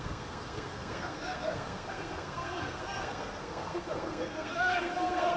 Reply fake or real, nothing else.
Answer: fake